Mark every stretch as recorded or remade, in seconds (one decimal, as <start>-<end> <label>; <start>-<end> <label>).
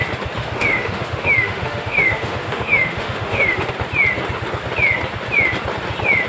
0.0-0.4 recorded; 0.4-3.7 remade; 3.7-6.3 recorded